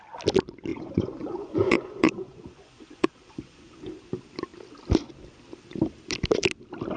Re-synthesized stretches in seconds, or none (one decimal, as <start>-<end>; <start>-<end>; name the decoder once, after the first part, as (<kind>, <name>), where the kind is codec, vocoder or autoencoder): 0.7-3.8 (vocoder, Vocos)